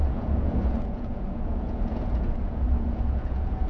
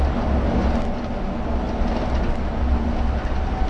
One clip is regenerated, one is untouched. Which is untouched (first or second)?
second